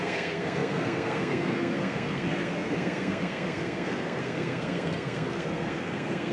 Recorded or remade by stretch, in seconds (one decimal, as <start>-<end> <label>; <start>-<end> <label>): 0.0-6.3 remade